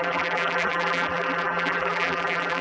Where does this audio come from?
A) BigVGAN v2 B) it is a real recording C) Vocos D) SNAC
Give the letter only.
A